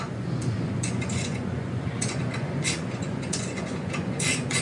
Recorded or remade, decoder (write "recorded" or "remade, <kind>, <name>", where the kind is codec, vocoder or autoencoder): remade, vocoder, Vocos